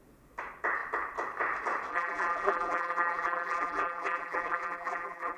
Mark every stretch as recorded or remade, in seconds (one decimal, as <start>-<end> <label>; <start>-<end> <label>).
0.0-1.9 recorded; 1.9-5.4 remade